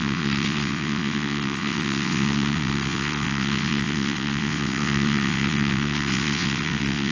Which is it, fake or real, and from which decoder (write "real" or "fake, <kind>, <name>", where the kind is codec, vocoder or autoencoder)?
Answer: fake, vocoder, WaveNeXt